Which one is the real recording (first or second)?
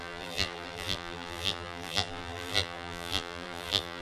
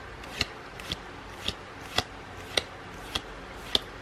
second